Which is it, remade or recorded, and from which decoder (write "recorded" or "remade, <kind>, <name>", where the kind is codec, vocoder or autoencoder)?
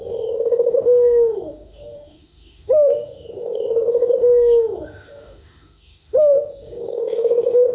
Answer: remade, autoencoder, DAC-VAE